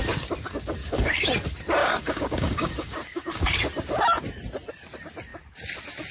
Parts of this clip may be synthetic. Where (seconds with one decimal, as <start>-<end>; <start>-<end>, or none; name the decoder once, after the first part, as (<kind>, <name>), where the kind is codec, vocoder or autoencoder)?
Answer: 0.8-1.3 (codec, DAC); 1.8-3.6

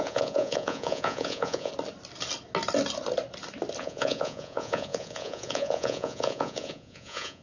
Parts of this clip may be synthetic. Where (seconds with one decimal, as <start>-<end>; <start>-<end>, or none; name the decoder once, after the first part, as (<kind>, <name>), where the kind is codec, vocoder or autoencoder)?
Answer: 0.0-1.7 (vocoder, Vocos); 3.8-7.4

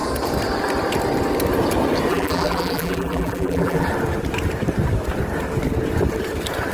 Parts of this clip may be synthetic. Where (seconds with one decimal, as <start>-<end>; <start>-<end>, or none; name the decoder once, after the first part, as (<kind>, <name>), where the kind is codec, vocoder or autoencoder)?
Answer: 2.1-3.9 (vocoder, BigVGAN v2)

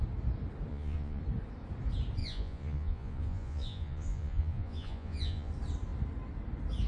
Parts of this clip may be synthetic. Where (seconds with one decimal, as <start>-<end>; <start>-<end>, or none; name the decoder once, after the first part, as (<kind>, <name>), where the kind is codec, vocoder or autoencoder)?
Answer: 0.7-1.2 (vocoder, Vocos); 2.2-5.5

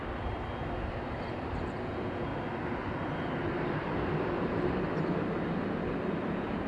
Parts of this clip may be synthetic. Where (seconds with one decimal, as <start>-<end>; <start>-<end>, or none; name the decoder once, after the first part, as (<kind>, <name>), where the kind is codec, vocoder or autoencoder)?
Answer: 1.8-2.3 (vocoder, Vocos); 6.3-6.7

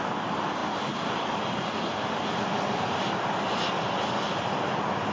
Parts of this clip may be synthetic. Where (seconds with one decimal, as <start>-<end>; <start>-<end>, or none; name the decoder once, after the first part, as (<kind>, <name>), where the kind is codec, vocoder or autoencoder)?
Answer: none